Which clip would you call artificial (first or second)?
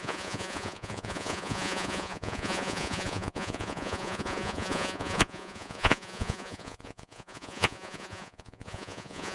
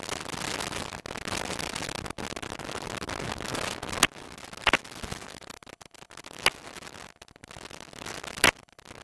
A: first